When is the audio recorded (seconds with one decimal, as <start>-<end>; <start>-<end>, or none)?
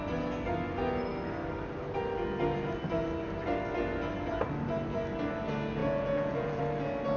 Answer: 0.0-5.8; 6.6-7.2